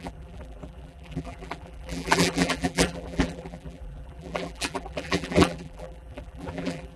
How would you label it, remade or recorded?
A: remade